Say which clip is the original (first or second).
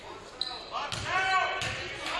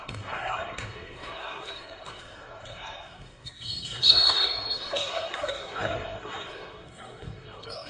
first